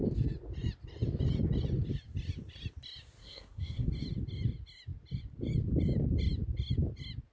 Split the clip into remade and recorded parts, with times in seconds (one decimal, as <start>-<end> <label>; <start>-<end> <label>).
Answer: 0.0-3.2 recorded; 3.2-3.9 remade; 3.9-7.3 recorded

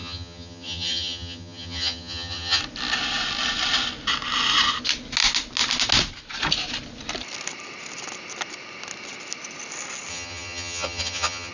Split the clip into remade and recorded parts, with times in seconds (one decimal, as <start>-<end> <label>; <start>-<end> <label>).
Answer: 0.0-2.6 remade; 2.6-10.1 recorded; 10.1-11.5 remade

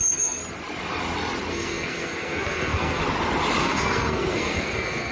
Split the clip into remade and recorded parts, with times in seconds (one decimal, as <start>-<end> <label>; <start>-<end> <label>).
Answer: 0.0-0.4 remade; 0.4-1.5 recorded; 1.5-3.0 remade; 3.0-3.6 recorded; 3.6-5.1 remade

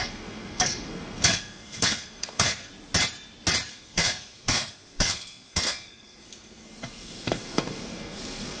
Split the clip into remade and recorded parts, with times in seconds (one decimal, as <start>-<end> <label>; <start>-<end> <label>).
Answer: 0.0-2.7 remade; 2.7-3.7 recorded; 3.7-8.6 remade

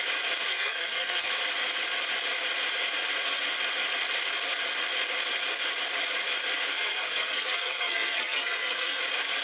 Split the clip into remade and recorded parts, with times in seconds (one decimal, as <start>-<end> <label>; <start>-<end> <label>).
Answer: 0.0-0.5 recorded; 0.5-1.3 remade; 1.3-6.7 recorded; 6.7-9.0 remade; 9.0-9.4 recorded

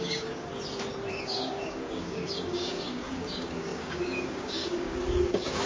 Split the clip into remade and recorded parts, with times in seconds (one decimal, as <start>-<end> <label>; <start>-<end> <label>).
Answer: 0.0-0.5 remade; 0.5-1.1 recorded; 1.1-5.7 remade

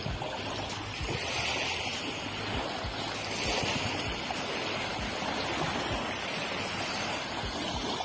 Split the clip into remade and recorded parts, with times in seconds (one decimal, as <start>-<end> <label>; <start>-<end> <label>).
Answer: 0.0-8.0 recorded

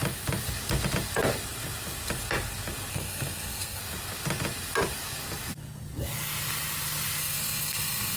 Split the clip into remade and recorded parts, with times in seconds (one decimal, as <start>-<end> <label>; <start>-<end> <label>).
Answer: 0.0-2.9 recorded; 2.9-3.8 remade; 3.8-7.2 recorded; 7.2-8.2 remade